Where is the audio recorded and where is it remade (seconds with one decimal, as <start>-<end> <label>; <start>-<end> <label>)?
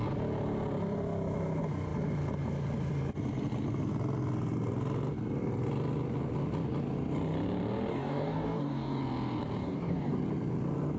0.0-7.9 recorded; 7.9-9.0 remade; 9.0-9.6 recorded; 9.6-10.2 remade; 10.2-11.0 recorded